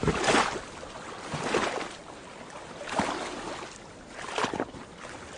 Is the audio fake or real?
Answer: real